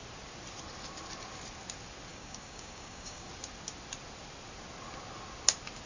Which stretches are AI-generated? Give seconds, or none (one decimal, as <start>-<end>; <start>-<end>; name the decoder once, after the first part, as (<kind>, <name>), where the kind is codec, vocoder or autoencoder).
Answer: 2.1-3.3 (codec, DAC)